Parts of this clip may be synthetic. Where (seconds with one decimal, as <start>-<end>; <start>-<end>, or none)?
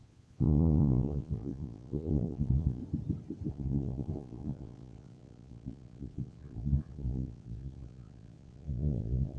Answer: 0.0-2.8; 3.5-9.4